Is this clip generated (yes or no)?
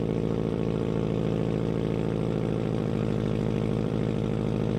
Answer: yes